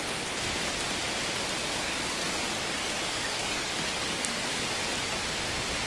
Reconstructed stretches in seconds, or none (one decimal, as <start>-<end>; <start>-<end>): 1.6-4.8